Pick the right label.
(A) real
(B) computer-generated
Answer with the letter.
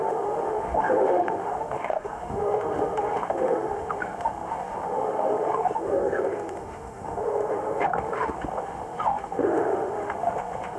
B